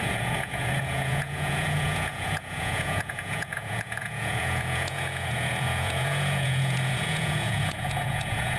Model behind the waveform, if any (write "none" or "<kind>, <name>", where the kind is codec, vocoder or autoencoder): vocoder, Vocos